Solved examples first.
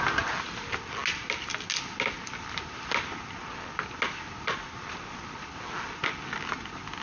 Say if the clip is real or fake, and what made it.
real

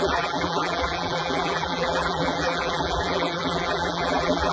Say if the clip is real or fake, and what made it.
fake, vocoder, BigVGAN v2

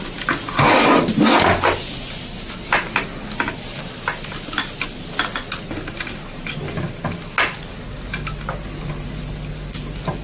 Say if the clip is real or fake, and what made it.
real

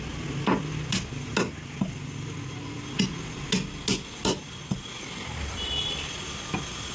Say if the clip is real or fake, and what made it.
real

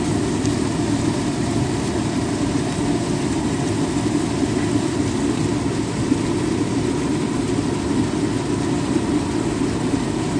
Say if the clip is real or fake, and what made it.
fake, vocoder, BigVGAN v2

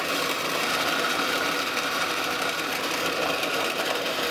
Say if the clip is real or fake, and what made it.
fake, vocoder, BigVGAN v2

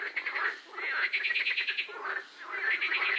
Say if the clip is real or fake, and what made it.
real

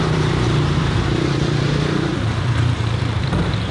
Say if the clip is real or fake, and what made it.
fake, vocoder, BigVGAN v2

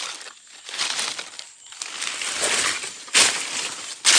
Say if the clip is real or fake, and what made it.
real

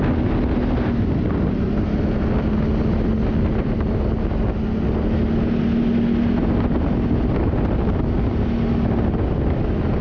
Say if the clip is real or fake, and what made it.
real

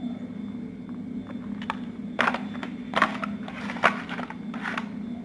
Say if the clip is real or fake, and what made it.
real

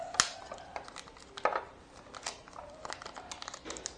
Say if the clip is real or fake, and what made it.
real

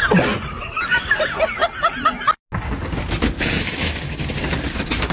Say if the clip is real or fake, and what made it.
real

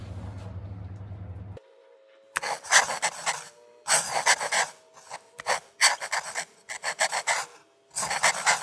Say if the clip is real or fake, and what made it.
real